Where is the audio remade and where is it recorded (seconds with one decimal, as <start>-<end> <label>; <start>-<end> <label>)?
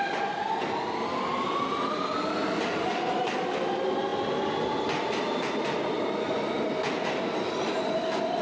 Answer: 0.0-8.4 recorded